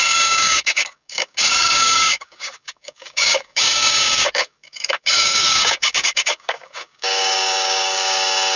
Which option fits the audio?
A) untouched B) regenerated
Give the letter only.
B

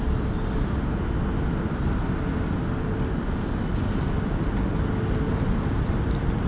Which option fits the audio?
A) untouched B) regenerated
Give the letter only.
A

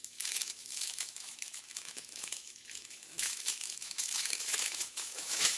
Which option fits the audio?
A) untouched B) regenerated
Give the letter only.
B